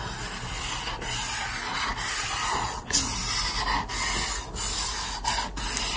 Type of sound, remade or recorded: recorded